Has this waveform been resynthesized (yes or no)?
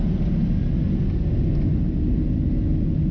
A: no